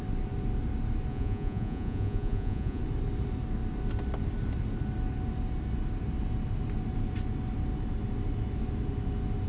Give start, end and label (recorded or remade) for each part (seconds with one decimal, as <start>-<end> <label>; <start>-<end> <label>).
0.0-1.1 recorded; 1.1-2.8 remade; 2.8-9.5 recorded